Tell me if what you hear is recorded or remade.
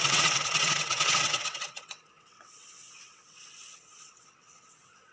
remade